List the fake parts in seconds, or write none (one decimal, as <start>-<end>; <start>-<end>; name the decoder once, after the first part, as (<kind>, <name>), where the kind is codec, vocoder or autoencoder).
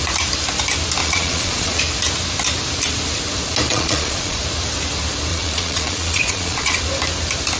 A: 1.0-1.8 (vocoder, Vocos); 3.7-4.4; 5.3-6.8